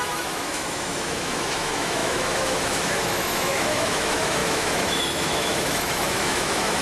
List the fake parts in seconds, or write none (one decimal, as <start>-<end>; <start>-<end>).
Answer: 0.0-6.8